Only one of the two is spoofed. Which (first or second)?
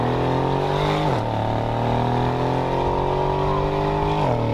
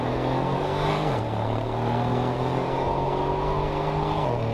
second